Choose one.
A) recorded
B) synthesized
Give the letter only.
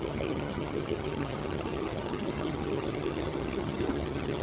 B